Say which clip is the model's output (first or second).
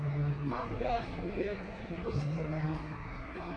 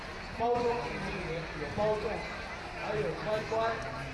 first